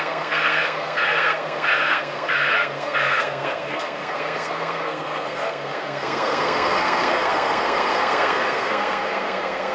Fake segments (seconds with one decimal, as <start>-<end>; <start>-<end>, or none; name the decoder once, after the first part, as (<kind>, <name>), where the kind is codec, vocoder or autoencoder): 0.0-9.7 (codec, SNAC)